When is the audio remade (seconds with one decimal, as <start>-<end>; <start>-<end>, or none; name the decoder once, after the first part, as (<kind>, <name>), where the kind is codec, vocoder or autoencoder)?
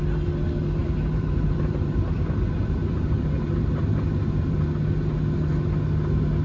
0.8-4.6 (vocoder, BigVGAN v2)